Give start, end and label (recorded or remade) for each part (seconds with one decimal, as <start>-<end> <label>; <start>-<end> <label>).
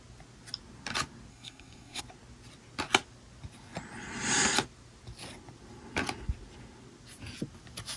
0.0-1.3 recorded; 1.3-2.0 remade; 2.0-8.0 recorded